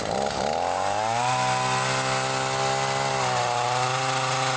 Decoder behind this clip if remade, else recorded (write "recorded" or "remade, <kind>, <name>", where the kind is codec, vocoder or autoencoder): recorded